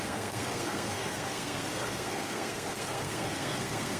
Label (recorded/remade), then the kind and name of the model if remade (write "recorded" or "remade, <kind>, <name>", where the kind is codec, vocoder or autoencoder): remade, codec, SNAC